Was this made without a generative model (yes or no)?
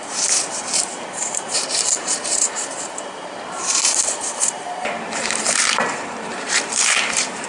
no